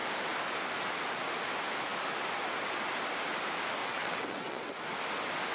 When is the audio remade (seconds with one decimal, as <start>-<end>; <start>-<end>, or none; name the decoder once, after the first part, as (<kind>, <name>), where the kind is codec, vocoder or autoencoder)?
3.8-4.7 (vocoder, WaveNeXt)